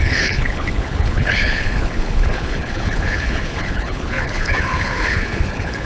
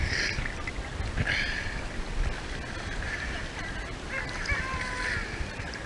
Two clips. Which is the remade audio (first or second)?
first